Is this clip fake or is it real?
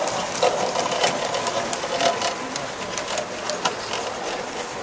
real